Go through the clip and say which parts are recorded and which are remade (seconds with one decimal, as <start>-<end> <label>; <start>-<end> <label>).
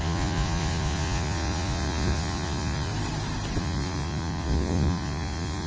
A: 0.0-2.9 remade; 2.9-3.6 recorded; 3.6-5.7 remade